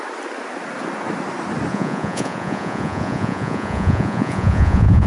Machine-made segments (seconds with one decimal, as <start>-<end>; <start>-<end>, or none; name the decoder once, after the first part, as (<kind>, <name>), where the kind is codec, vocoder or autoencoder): 1.7-5.1 (vocoder, Vocos)